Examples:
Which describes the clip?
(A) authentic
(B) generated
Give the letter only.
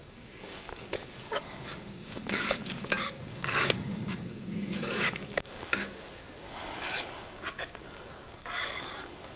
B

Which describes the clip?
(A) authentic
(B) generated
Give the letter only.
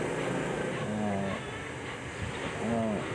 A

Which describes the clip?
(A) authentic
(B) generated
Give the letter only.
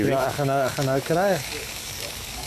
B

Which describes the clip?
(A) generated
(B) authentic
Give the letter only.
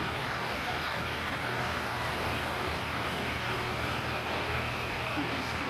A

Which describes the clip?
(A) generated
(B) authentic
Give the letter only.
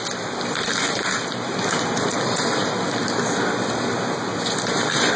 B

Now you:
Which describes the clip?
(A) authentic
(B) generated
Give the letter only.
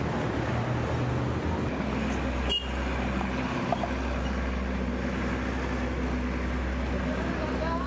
A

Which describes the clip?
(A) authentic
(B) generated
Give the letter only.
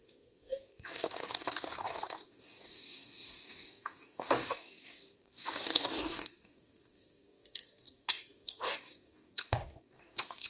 B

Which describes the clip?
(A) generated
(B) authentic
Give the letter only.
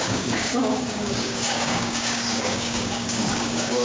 A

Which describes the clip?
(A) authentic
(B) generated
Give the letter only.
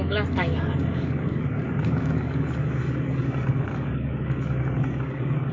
B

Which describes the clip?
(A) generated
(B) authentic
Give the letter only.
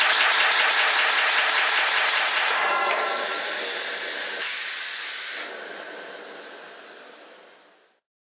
B